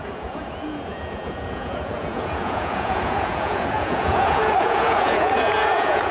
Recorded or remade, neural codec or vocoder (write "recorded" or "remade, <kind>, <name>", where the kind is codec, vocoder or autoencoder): remade, vocoder, Vocos